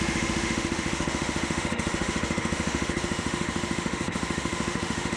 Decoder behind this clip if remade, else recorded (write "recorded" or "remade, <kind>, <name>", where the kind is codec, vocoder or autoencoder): remade, autoencoder, DAC-VAE